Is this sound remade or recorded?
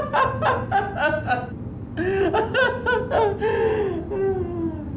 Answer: recorded